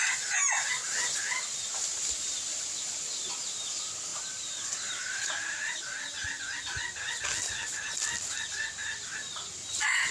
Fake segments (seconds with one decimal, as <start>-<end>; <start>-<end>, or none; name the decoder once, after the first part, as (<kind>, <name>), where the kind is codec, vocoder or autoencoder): 4.1-5.8 (vocoder, BigVGAN v2)